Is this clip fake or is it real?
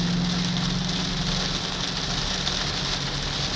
real